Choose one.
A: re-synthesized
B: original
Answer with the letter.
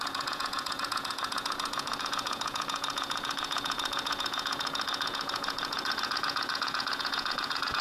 A